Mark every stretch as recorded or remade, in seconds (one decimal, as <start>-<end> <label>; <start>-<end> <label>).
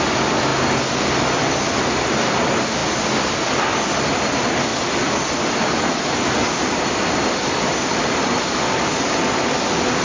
0.0-10.0 recorded